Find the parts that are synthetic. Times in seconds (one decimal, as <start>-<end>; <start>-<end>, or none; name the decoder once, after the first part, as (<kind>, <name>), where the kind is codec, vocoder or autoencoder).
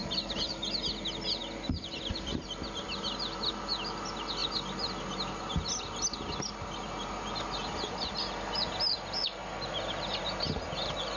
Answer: none